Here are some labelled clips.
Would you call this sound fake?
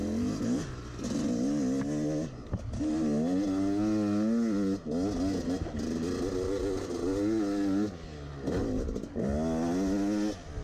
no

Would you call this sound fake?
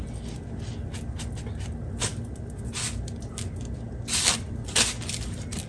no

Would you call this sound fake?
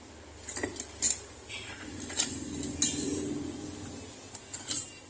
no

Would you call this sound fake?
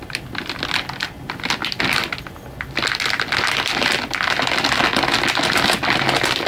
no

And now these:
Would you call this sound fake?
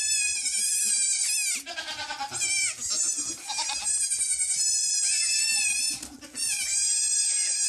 no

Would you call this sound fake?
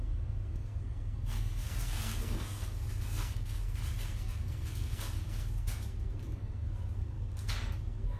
yes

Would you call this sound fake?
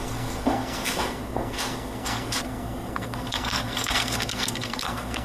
yes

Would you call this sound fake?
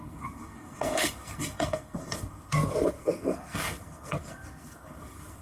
yes